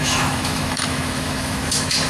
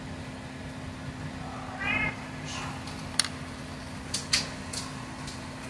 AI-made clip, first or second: first